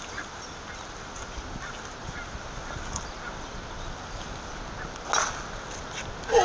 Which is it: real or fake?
real